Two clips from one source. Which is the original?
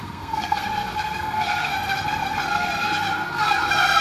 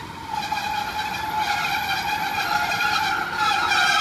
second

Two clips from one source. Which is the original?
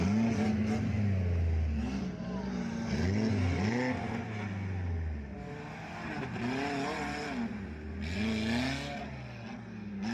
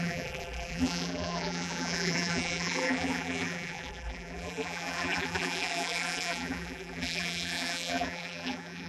first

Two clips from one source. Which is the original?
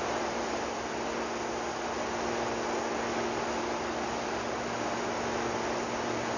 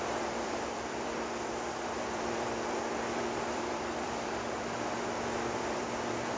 first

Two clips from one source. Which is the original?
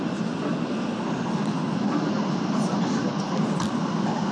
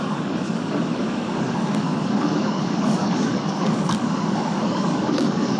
first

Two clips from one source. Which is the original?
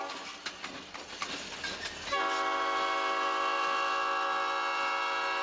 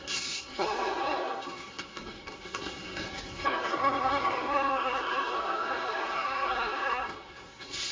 first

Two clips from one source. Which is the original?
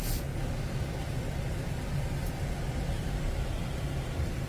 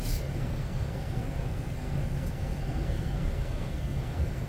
first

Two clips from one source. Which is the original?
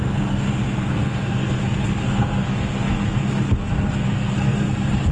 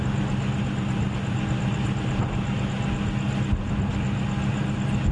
second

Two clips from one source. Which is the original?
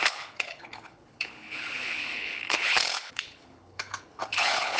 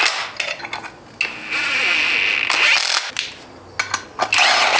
second